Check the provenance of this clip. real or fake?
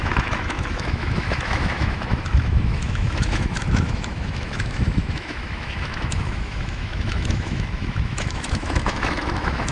fake